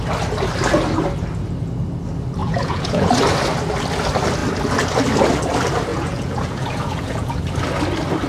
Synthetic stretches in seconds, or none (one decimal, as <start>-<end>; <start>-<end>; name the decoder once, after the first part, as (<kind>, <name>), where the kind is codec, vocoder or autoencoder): 2.4-3.1 (vocoder, Vocos); 5.9-7.4